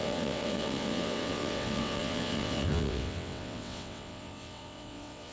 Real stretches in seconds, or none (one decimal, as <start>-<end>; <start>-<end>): none